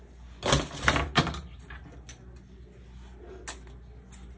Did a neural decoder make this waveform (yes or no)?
no